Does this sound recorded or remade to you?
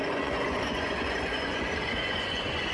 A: remade